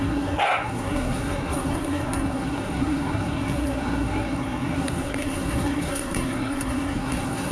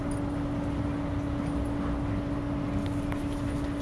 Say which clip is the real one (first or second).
second